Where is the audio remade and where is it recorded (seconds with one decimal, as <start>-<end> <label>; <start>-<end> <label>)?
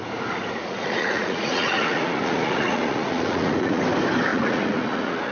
0.0-0.6 recorded; 0.6-3.8 remade; 3.8-4.3 recorded; 4.3-5.3 remade